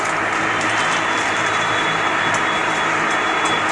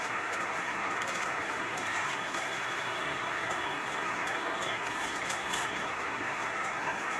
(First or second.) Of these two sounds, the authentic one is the first